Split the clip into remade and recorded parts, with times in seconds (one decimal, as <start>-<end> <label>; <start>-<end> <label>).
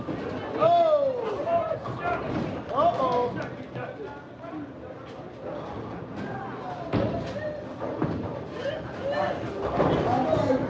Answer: 0.0-1.5 recorded; 1.5-2.3 remade; 2.3-8.0 recorded; 8.0-8.7 remade; 8.7-10.7 recorded